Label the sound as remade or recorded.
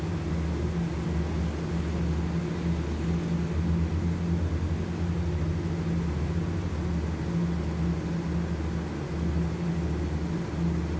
recorded